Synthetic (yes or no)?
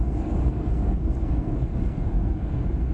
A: yes